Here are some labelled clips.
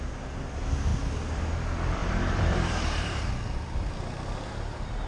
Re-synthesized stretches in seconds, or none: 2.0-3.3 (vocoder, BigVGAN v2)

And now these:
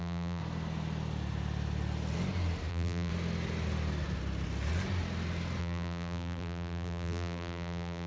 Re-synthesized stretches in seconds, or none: 0.0-0.4 (vocoder, BigVGAN v2); 2.7-3.1; 5.6-8.1

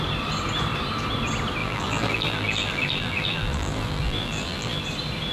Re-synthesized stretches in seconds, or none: 1.6-4.8 (vocoder, BigVGAN v2)

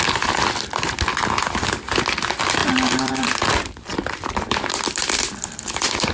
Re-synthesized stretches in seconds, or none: 0.0-1.1 (vocoder, BigVGAN v2); 2.2-6.1

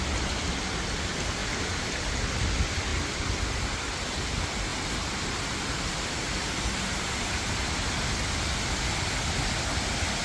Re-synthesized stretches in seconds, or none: 1.4-2.1 (vocoder, BigVGAN v2); 2.9-3.6; 4.7-5.9

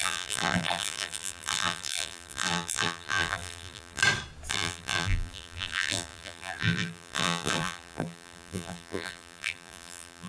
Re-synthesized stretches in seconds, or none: 0.0-4.0 (vocoder, BigVGAN v2); 4.5-10.3